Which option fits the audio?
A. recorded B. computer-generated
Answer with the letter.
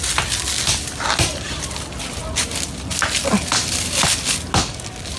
A